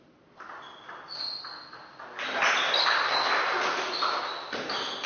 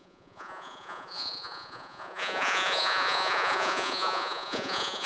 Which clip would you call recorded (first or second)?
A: first